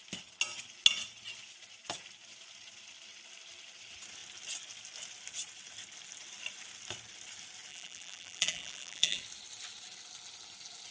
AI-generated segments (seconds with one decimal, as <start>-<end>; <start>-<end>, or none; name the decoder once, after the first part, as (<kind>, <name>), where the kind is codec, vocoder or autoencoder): 7.7-9.2 (vocoder, BigVGAN v2)

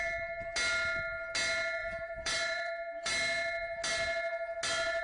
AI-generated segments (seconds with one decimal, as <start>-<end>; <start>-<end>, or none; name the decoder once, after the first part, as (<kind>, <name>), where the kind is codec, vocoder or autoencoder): 1.8-2.7 (vocoder, BigVGAN v2)

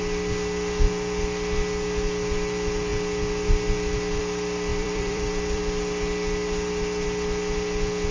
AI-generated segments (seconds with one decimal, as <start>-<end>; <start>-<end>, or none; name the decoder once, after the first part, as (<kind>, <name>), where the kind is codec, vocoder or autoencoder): 4.7-5.6 (vocoder, BigVGAN v2)

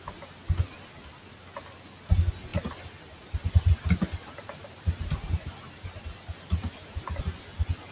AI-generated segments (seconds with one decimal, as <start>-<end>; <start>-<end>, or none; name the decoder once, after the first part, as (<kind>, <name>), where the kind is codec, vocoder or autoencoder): 2.5-7.2 (vocoder, BigVGAN v2)

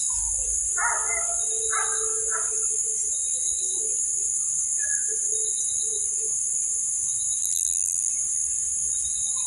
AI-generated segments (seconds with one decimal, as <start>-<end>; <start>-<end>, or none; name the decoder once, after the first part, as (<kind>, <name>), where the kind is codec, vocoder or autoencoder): 7.4-8.1 (vocoder, BigVGAN v2)

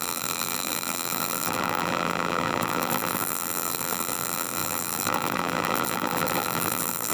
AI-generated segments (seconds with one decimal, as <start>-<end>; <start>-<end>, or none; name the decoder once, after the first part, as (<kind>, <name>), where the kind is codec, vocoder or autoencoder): 0.0-7.1 (vocoder, BigVGAN v2)

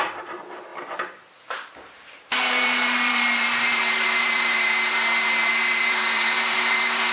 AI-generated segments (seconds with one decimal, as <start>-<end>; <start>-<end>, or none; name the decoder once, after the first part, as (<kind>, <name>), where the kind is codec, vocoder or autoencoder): 0.0-0.7 (vocoder, BigVGAN v2); 1.3-7.1

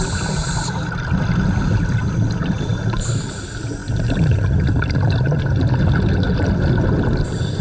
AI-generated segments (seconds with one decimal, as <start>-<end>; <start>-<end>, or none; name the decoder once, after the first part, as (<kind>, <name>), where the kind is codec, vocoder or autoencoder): 3.8-4.8 (vocoder, BigVGAN v2)